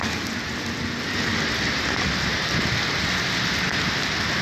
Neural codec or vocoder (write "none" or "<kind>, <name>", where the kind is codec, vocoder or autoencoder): none